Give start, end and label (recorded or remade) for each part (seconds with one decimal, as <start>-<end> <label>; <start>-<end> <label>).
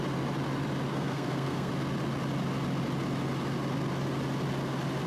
0.0-0.9 recorded; 0.9-1.7 remade; 1.7-5.1 recorded